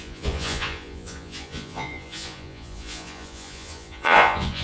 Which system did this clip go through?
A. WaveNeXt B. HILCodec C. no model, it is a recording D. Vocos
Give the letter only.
D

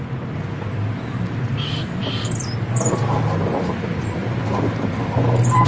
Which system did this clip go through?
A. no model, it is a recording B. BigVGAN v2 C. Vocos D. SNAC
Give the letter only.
B